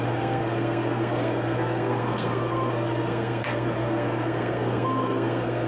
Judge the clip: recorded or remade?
remade